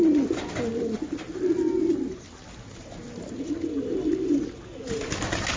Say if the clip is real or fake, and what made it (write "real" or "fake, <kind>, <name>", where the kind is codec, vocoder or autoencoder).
real